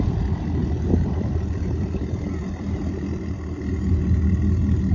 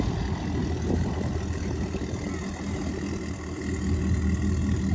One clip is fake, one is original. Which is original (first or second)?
second